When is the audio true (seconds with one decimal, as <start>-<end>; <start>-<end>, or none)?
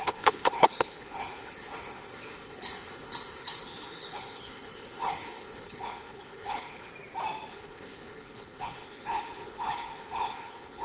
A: 6.9-7.5